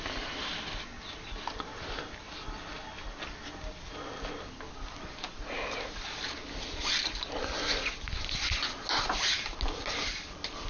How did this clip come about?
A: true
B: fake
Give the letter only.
A